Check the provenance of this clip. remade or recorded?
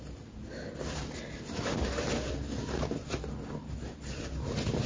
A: recorded